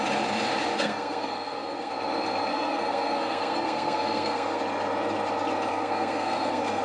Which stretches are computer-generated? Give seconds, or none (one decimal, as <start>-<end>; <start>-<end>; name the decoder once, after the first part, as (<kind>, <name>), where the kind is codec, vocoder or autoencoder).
0.7-1.9 (codec, SNAC); 2.5-4.6; 5.7-6.8